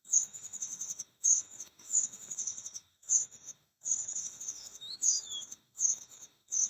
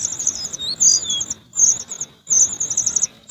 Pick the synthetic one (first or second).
first